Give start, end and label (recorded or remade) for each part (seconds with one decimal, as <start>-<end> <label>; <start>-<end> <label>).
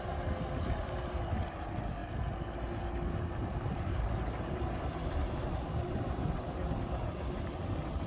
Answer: 0.0-8.1 recorded